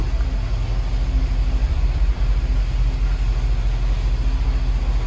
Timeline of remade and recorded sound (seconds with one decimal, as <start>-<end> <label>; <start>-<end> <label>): 0.0-1.6 recorded; 1.6-2.2 remade; 2.2-5.1 recorded